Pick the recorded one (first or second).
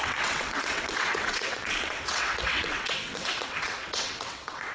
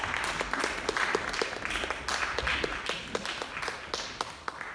second